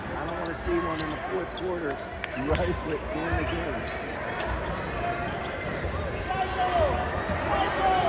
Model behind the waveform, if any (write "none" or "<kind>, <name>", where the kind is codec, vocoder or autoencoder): none